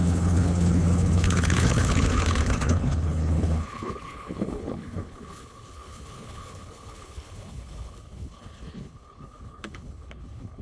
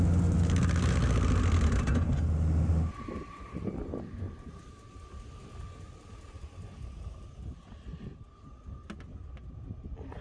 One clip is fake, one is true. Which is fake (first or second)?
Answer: first